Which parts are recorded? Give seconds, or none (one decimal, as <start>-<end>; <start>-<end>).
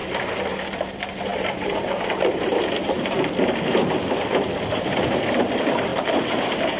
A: 0.0-0.9